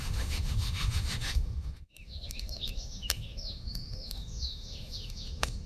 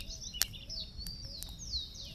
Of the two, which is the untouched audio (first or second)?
second